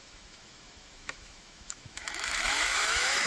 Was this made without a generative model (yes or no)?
no